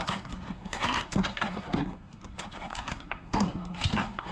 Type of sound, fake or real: fake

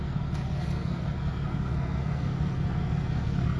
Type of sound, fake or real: fake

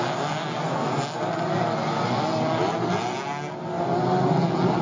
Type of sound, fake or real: real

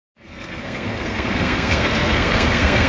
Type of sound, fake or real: fake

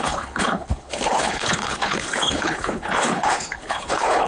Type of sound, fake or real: fake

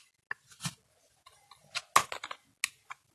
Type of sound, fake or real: real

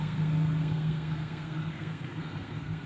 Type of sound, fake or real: fake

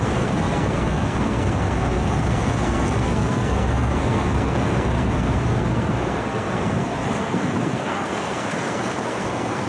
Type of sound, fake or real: fake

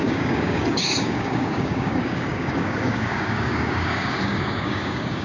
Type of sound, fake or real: fake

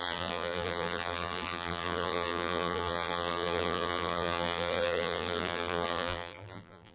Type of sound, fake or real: fake